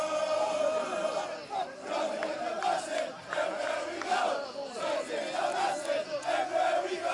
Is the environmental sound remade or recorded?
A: recorded